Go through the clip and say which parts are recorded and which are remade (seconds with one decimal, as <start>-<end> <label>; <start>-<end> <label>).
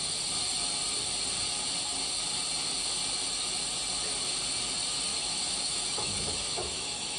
0.0-5.1 recorded; 5.1-7.2 remade